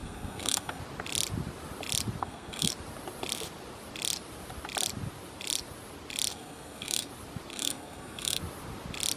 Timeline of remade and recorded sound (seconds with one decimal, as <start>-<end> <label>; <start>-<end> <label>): 0.0-0.8 remade; 0.8-2.2 recorded; 2.2-2.7 remade; 2.7-6.3 recorded; 6.3-7.1 remade; 7.1-7.5 recorded; 7.5-8.4 remade; 8.4-9.2 recorded